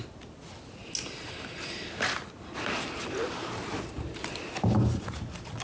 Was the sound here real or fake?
real